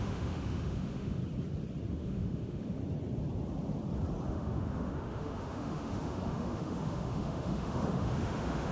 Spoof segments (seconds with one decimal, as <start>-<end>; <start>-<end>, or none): 0.0-1.2; 1.9-2.8; 4.3-8.7